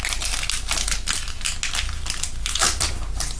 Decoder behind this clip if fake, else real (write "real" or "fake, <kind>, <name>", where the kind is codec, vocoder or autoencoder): real